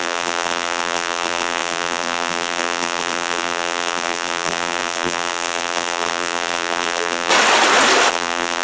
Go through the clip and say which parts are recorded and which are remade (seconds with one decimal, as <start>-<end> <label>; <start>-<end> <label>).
0.0-7.3 remade; 7.3-8.1 recorded; 8.1-8.6 remade